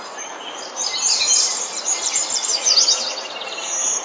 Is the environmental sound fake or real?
real